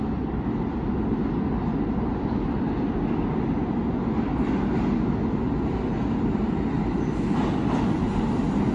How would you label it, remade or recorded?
recorded